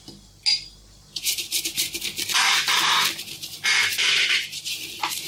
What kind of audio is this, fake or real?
real